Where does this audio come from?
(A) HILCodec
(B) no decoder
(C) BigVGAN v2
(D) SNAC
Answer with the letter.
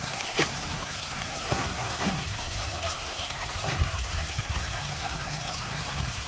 D